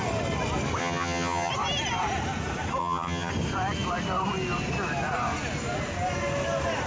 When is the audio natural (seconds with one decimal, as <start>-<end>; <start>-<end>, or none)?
0.0-0.8; 1.5-2.8; 3.3-6.9